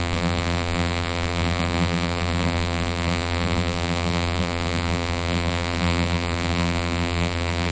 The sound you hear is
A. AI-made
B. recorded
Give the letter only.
A